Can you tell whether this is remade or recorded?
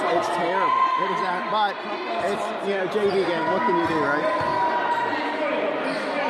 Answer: recorded